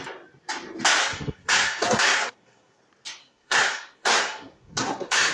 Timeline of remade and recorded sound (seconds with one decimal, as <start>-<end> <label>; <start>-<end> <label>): 0.0-1.0 recorded; 1.0-2.8 remade; 2.8-3.2 recorded; 3.2-5.3 remade